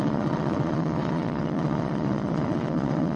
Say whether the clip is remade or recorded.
remade